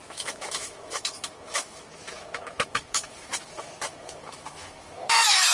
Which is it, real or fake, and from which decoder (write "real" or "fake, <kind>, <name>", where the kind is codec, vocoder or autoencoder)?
fake, autoencoder, DAC-VAE